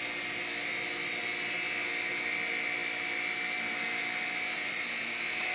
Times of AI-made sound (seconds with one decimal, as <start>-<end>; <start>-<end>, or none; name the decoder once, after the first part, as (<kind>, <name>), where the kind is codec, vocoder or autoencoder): none